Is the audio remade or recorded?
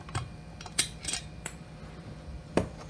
remade